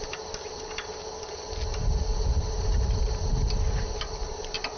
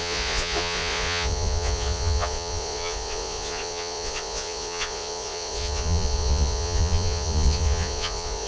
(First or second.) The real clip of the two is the first